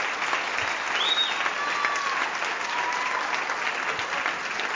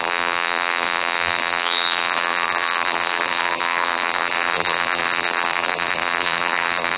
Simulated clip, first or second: second